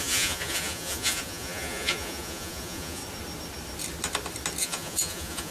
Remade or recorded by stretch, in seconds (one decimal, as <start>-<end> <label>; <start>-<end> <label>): 0.0-3.0 remade; 3.0-4.6 recorded; 4.6-5.5 remade